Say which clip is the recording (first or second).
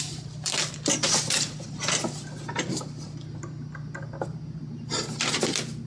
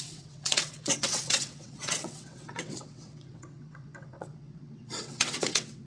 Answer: first